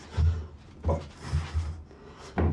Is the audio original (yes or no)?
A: yes